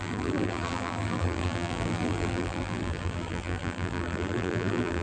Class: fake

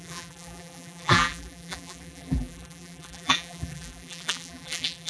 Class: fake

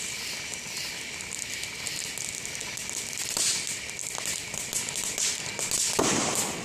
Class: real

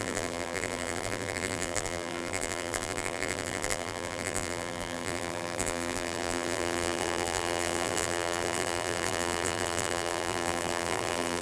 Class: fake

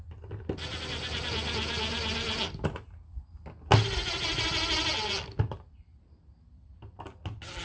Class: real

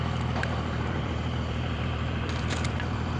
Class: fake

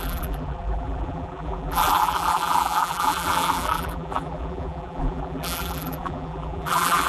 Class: fake